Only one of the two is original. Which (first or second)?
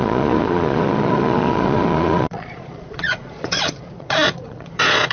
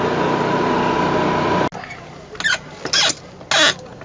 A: second